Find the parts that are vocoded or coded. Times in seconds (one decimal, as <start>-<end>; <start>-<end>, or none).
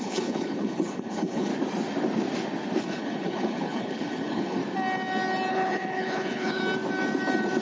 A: 0.0-1.5; 2.8-4.6; 5.5-6.6